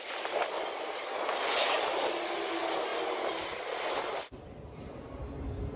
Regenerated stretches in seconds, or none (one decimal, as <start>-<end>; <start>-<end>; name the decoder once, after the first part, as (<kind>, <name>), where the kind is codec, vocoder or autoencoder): none